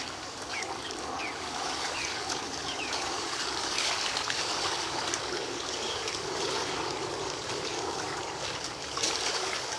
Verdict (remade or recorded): remade